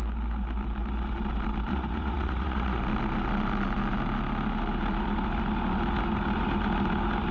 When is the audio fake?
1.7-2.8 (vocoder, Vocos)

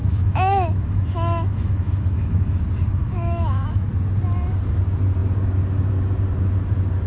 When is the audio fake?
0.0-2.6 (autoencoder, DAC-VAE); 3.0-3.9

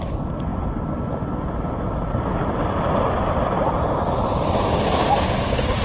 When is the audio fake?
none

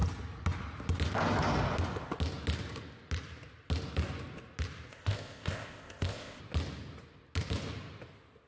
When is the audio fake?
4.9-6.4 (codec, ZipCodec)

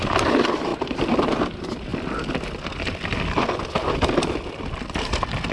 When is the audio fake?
0.7-1.4 (vocoder, BigVGAN v2)